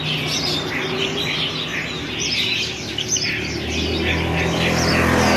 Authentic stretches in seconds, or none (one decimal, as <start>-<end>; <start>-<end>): 0.0-5.4

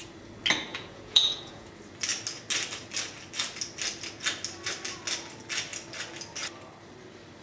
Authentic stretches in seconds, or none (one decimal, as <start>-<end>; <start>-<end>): 0.0-0.7; 1.7-7.4

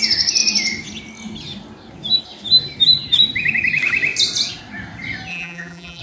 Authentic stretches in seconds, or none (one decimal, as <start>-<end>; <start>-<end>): 0.0-5.3

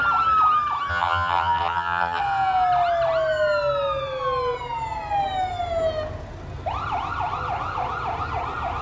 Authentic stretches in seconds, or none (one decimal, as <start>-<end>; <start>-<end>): 0.0-0.9; 2.2-8.8

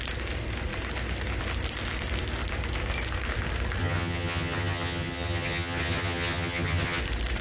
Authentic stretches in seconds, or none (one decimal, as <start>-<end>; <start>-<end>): 0.0-3.8; 7.0-7.4

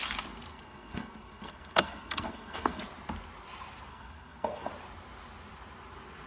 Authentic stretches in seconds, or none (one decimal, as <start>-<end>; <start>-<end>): 0.0-0.5; 2.8-3.9; 4.7-6.3